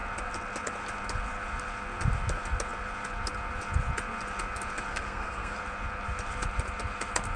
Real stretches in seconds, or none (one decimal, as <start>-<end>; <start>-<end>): 0.0-4.9; 5.6-7.4